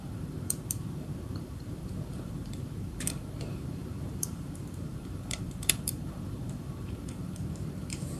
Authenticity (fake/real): fake